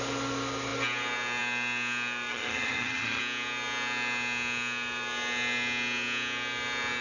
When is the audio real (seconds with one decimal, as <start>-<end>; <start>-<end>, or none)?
0.0-2.3; 3.2-7.0